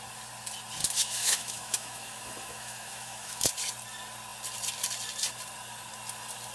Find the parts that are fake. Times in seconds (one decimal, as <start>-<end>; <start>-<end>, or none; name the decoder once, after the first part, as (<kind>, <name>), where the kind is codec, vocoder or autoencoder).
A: 0.8-3.5 (autoencoder, DAC-VAE)